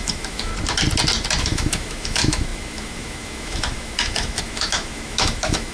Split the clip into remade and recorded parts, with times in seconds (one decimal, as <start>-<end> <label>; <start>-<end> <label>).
0.0-0.5 remade; 0.5-1.4 recorded; 1.4-5.7 remade